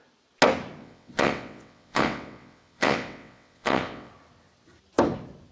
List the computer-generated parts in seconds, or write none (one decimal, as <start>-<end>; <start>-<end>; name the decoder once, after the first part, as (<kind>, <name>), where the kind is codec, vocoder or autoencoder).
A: 0.8-4.1 (vocoder, WaveNeXt)